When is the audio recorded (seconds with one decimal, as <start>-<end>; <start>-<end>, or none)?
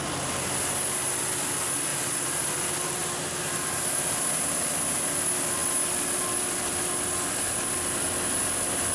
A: 0.0-1.9; 2.5-3.0; 4.2-8.9